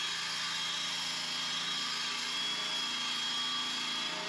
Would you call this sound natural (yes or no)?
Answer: yes